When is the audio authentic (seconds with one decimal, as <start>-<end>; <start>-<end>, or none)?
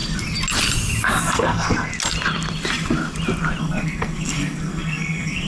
0.0-1.2; 1.9-3.6